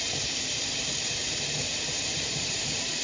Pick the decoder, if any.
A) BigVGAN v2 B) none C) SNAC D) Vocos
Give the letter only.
A